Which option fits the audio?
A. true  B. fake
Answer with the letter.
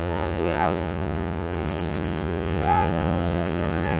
B